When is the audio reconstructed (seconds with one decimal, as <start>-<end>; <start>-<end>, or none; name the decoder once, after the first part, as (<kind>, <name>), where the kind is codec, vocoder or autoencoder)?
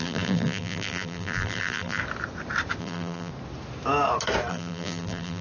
0.0-2.0 (vocoder, BigVGAN v2); 2.8-3.3; 4.5-5.4